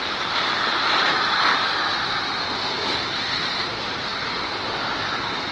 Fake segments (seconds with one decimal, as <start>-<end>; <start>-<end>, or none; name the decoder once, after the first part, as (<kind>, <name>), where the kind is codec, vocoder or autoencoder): none